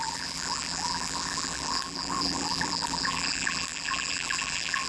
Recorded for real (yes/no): no